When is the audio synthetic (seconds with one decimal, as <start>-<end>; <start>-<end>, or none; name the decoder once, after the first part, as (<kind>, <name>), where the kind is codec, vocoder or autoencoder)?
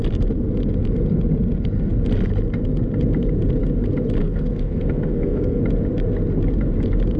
4.2-5.6 (codec, SNAC)